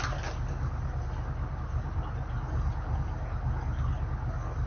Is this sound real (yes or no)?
yes